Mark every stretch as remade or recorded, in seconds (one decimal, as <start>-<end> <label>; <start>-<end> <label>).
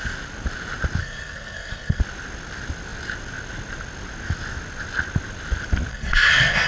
0.0-1.0 recorded; 1.0-2.0 remade; 2.0-5.9 recorded; 5.9-6.7 remade